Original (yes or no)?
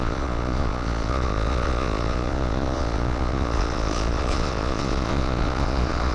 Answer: no